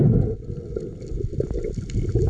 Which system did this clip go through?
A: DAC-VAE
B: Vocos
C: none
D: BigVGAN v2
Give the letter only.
C